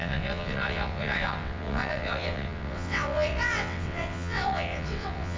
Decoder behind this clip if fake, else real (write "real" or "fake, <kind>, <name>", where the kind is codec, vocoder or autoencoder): fake, vocoder, WaveNeXt